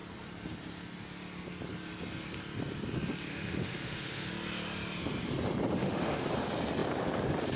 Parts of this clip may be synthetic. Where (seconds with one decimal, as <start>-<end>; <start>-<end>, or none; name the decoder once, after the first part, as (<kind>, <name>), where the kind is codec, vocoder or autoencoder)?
3.3-4.3 (autoencoder, DAC-VAE); 5.8-6.3